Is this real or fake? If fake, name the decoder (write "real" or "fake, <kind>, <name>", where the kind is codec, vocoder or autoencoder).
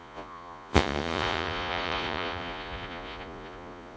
fake, vocoder, Vocos